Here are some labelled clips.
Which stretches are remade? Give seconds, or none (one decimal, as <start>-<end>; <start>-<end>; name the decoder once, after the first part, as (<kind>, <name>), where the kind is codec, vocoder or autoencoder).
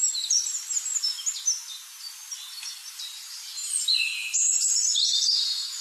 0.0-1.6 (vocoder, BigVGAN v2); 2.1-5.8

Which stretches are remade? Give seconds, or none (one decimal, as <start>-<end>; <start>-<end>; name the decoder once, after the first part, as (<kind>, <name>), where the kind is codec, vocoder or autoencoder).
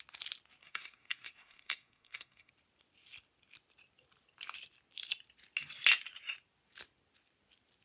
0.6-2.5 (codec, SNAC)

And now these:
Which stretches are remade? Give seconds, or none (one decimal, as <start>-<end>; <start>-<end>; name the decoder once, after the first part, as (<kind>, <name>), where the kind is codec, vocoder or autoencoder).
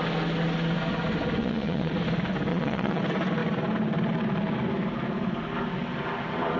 1.4-1.9 (vocoder, Vocos); 2.5-3.0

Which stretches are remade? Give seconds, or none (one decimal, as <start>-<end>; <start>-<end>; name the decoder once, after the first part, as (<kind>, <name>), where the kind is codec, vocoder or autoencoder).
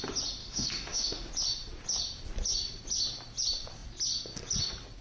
0.4-1.3 (autoencoder, DAC-VAE)